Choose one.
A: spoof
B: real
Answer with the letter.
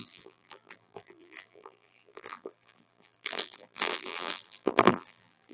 A